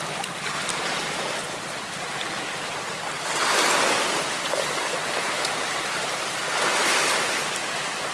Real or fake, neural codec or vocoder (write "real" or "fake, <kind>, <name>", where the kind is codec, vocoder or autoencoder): real